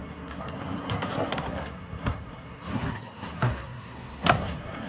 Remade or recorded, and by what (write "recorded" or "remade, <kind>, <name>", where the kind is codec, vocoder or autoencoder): remade, codec, SNAC